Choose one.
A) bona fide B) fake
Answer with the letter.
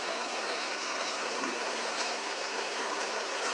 B